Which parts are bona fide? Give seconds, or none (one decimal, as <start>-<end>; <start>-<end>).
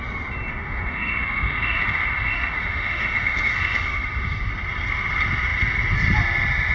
0.0-0.5; 4.5-6.7